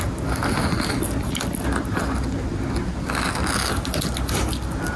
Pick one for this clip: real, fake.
real